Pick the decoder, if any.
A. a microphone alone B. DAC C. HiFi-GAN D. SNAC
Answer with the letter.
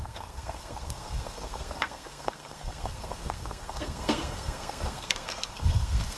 D